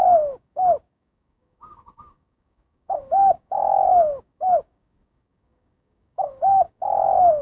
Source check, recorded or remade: remade